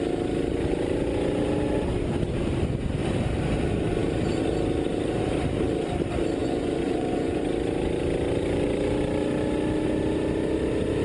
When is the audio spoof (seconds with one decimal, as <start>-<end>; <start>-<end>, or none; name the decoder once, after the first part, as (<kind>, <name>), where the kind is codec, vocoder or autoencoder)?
6.4-7.4 (vocoder, Vocos)